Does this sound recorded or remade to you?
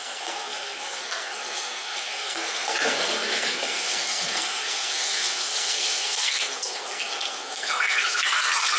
remade